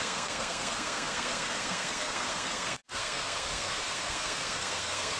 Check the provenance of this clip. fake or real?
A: fake